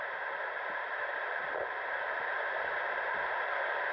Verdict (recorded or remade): remade